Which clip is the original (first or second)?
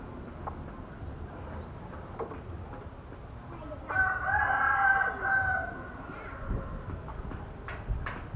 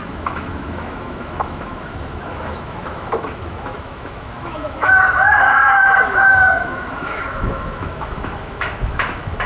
first